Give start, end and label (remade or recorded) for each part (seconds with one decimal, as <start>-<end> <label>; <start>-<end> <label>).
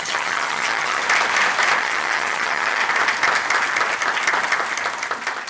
0.0-1.0 remade; 1.0-1.8 recorded; 1.8-2.8 remade; 2.8-5.5 recorded